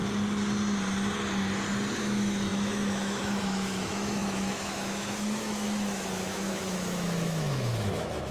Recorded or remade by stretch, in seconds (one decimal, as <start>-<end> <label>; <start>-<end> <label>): 0.0-2.0 recorded; 2.0-8.3 remade